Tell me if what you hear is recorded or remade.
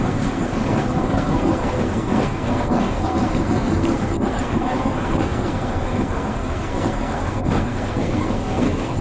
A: remade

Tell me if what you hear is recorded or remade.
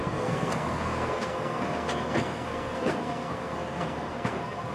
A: remade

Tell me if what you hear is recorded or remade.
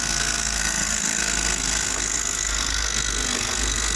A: remade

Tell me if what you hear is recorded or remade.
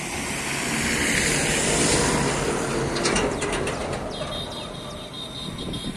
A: recorded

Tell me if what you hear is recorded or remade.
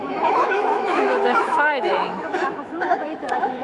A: remade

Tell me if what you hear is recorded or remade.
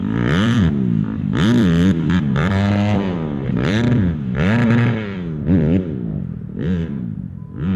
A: remade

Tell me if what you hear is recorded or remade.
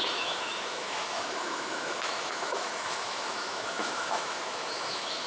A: remade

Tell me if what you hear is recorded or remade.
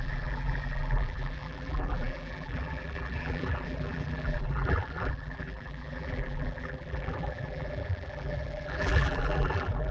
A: remade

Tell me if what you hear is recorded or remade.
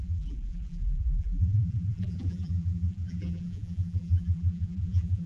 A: remade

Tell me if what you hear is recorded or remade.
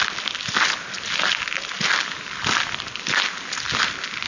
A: recorded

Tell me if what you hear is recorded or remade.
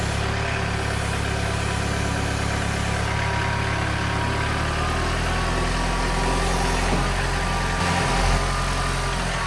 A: recorded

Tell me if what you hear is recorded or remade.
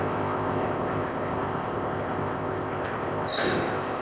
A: remade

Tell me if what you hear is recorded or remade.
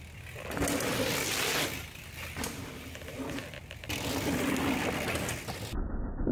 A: recorded